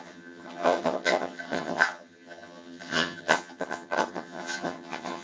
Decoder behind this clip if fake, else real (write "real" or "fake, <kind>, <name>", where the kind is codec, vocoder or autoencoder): fake, vocoder, HiFi-GAN